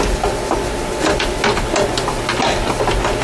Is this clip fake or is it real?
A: real